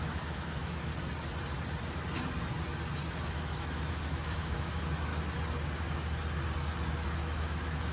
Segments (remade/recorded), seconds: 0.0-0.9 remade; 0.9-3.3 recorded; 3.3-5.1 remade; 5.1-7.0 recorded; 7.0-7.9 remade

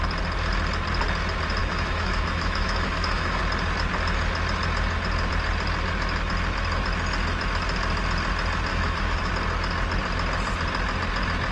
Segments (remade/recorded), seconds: 0.0-1.6 recorded; 1.6-3.4 remade; 3.4-8.7 recorded; 8.7-9.3 remade; 9.3-11.5 recorded